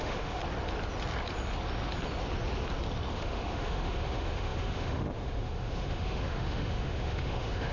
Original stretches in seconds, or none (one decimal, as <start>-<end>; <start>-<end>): 0.4-3.1